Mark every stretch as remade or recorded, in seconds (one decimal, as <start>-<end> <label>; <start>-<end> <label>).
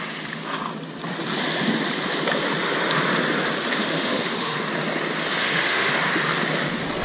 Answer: 0.0-3.8 recorded; 3.8-4.6 remade; 4.6-5.4 recorded; 5.4-5.9 remade; 5.9-7.0 recorded